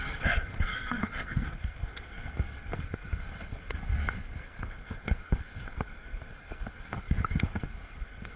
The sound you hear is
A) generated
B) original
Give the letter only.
A